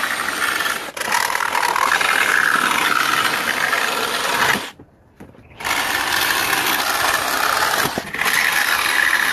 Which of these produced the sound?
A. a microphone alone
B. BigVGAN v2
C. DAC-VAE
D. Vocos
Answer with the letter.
A